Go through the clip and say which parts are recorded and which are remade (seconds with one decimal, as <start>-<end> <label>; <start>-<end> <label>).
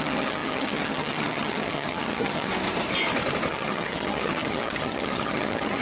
0.0-2.5 remade; 2.5-3.5 recorded; 3.5-5.8 remade